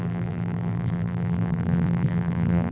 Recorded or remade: remade